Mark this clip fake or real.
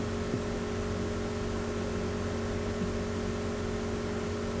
real